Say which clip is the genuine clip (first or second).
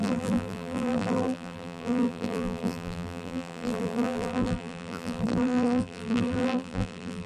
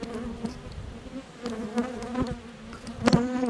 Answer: second